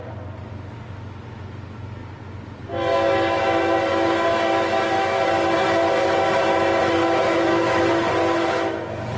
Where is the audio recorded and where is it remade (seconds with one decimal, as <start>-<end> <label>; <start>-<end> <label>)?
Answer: 0.0-7.0 recorded; 7.0-7.8 remade; 7.8-9.2 recorded